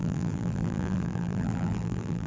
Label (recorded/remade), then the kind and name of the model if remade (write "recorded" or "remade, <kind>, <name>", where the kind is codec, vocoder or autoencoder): remade, vocoder, BigVGAN v2